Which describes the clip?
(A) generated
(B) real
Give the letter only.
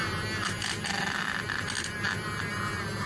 B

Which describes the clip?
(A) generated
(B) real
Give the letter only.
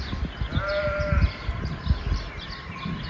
B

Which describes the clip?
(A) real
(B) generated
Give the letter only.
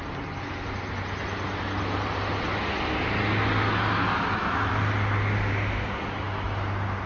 A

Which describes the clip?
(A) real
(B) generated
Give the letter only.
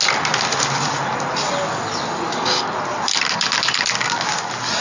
A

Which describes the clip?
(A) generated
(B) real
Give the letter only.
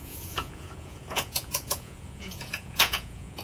A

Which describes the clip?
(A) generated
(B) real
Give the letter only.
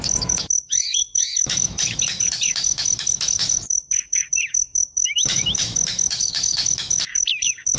A